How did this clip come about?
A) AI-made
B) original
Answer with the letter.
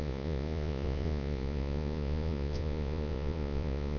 A